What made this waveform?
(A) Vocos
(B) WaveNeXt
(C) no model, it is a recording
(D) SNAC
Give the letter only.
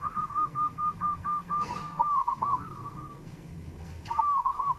D